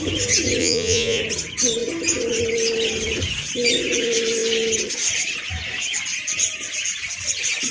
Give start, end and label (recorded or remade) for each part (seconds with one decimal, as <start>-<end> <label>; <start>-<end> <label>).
0.0-0.6 recorded; 0.6-1.2 remade; 1.2-7.7 recorded